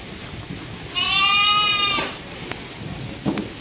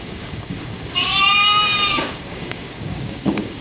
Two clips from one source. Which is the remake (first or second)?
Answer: second